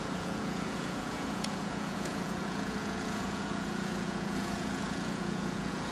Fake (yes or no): yes